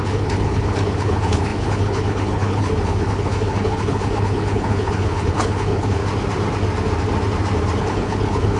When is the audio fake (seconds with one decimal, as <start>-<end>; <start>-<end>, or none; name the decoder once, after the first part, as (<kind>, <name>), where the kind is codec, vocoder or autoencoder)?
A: 0.0-6.0 (codec, HILCodec); 7.8-8.6